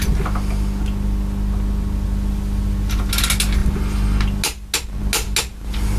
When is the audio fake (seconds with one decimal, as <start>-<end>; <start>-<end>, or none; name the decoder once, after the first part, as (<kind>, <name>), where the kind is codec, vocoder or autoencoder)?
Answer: none

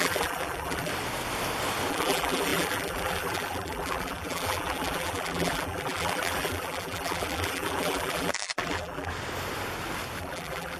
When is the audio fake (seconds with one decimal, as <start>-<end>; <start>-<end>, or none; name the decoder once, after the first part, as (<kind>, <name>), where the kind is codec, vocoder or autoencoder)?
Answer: 0.0-0.9 (vocoder, BigVGAN v2); 1.9-9.1; 10.2-10.8

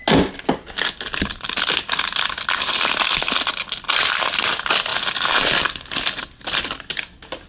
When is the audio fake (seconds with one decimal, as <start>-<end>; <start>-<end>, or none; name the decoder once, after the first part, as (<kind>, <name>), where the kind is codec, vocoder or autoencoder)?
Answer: none

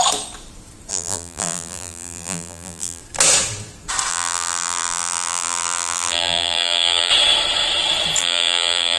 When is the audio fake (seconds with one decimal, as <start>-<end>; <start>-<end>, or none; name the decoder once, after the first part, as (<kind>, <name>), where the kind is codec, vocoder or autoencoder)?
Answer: 0.9-3.0 (vocoder, BigVGAN v2); 4.1-7.1; 8.2-9.0

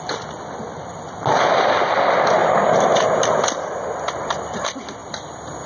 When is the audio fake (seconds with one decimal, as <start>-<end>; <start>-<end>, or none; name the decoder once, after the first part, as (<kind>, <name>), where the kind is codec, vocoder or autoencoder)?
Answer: 2.4-4.1 (vocoder, BigVGAN v2); 5.0-5.7

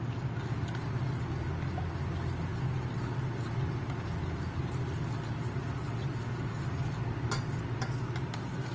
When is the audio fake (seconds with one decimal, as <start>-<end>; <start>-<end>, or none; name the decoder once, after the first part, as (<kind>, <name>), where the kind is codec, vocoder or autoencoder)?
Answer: none